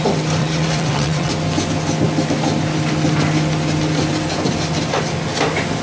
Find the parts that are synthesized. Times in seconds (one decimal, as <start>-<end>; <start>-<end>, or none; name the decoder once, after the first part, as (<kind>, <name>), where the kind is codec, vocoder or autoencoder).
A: 0.4-1.3 (vocoder, WaveNeXt)